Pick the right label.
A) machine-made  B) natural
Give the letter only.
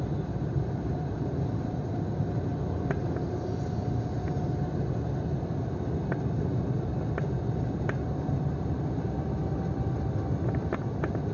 B